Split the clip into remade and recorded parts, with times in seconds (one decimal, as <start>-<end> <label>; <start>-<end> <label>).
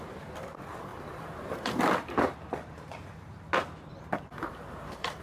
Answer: 0.0-0.9 recorded; 0.9-3.5 remade; 3.5-3.9 recorded; 3.9-5.2 remade